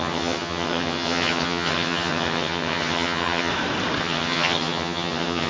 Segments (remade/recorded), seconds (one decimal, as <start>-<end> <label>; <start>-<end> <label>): 0.0-3.5 remade; 3.5-4.0 recorded; 4.0-5.5 remade